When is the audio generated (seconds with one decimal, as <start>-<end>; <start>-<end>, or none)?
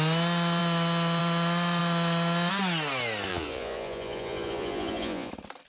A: 3.3-5.3